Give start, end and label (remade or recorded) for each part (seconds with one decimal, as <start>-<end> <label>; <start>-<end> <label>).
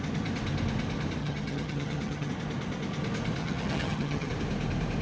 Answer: 0.0-1.2 recorded; 1.2-2.3 remade; 2.3-3.4 recorded; 3.4-4.3 remade; 4.3-5.0 recorded